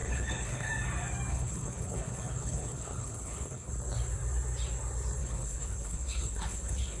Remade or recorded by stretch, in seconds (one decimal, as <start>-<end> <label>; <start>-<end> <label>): 0.0-0.7 remade; 0.7-1.3 recorded; 1.3-3.7 remade; 3.7-5.2 recorded; 5.2-7.0 remade